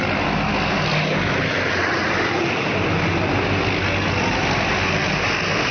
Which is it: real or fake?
real